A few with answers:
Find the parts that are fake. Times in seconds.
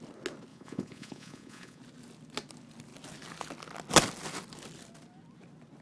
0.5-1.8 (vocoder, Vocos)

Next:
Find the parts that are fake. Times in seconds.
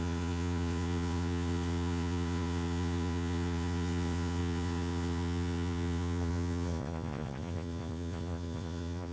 0.0-9.1 (vocoder, Vocos)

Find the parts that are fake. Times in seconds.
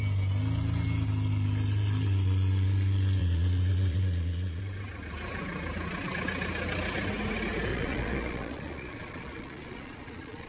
3.2-4.6 (vocoder, Vocos); 7.7-10.5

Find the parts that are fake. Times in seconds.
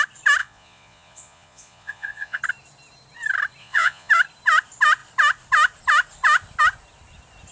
0.4-2.4 (vocoder, Vocos); 3.6-4.1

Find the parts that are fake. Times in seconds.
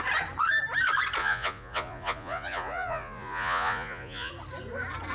1.2-4.3 (vocoder, Vocos)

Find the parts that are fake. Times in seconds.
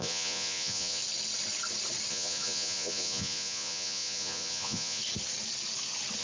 0.0-1.0 (vocoder, Vocos); 2.1-5.0